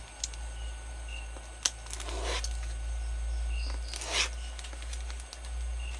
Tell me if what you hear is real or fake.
real